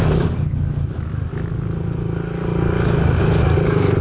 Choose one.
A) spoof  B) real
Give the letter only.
B